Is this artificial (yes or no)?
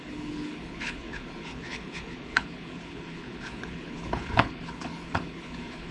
yes